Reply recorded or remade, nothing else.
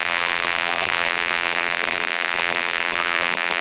remade